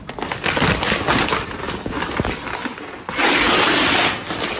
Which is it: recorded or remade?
recorded